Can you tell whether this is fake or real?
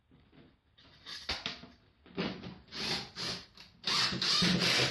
real